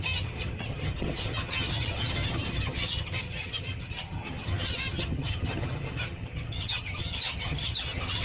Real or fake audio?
fake